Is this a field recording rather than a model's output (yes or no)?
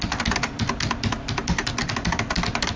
yes